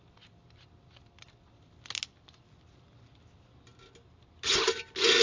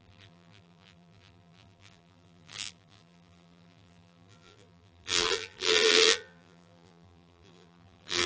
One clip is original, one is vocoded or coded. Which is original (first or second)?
first